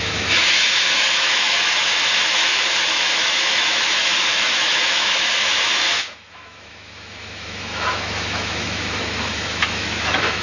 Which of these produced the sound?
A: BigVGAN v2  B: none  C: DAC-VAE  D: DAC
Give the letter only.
C